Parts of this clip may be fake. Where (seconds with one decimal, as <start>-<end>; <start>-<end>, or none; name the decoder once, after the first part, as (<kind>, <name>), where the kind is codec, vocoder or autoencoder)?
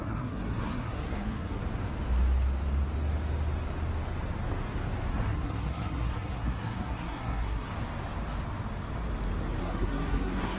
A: 0.0-1.6 (codec, SNAC); 5.1-7.7; 9.6-10.6